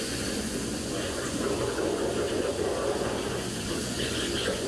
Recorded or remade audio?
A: remade